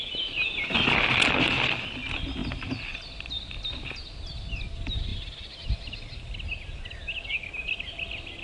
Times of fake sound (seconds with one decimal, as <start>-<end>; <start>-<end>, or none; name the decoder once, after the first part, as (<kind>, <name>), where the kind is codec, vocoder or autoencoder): none